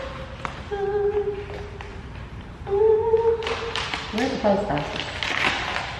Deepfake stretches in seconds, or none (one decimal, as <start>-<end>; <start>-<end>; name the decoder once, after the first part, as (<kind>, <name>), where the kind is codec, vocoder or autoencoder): 1.9-2.8 (vocoder, BigVGAN v2)